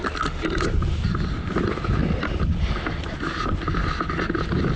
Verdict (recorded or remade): recorded